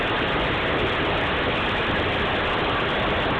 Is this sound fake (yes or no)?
no